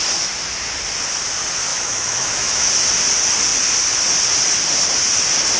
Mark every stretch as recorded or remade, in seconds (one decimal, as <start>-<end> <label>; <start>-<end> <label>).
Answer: 0.0-1.7 recorded; 1.7-2.7 remade; 2.7-5.6 recorded